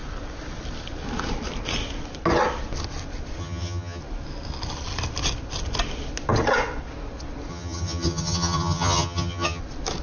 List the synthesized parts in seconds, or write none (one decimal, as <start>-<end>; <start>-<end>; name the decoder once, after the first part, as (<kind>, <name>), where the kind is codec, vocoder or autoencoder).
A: 3.4-4.0 (vocoder, HiFi-GAN); 7.5-9.6